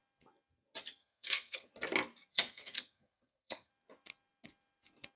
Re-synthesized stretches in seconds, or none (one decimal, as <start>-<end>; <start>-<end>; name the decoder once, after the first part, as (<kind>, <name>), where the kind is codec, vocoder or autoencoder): 1.0-1.7 (codec, SNAC); 2.3-3.7